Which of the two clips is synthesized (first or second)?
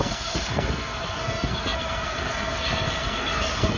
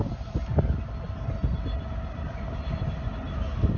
first